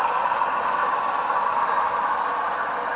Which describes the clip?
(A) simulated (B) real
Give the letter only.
B